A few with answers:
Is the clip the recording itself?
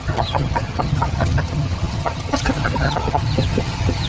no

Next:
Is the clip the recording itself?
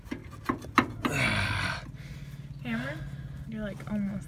yes